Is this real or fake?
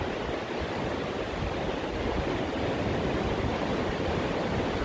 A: real